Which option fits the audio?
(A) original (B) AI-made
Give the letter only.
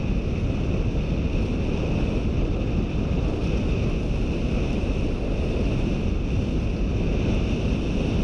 A